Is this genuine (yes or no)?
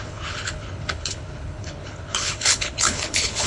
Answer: no